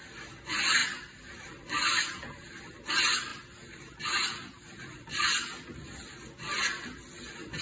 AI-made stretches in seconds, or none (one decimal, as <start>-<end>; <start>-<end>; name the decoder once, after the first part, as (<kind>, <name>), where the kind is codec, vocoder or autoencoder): none